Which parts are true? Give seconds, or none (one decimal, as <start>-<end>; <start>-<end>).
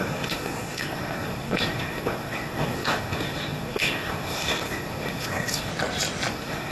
5.7-6.3